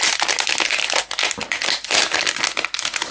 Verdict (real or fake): real